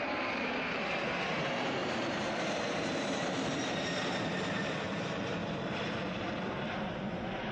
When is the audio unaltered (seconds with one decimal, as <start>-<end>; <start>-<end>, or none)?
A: none